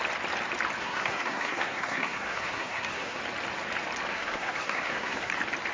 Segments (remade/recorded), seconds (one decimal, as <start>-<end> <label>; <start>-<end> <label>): 0.0-0.8 recorded; 0.8-3.2 remade; 3.2-4.1 recorded; 4.1-5.3 remade; 5.3-5.7 recorded

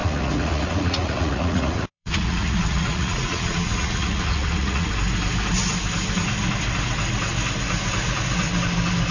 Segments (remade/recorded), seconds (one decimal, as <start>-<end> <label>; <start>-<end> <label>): 0.0-4.9 remade; 4.9-9.1 recorded